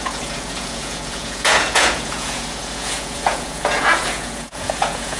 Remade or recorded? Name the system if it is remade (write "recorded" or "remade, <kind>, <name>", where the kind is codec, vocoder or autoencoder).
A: remade, vocoder, Vocos